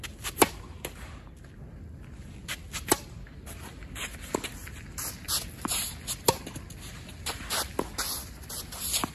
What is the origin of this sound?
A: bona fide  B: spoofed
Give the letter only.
A